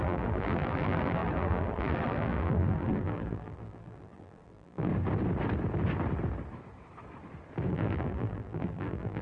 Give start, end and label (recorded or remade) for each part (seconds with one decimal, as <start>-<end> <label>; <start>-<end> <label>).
0.0-4.9 remade; 4.9-7.7 recorded; 7.7-9.2 remade